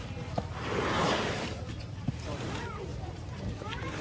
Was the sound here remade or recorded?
remade